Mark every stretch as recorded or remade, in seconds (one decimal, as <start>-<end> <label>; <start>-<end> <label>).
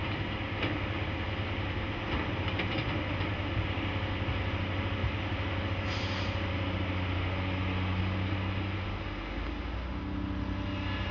0.0-11.1 recorded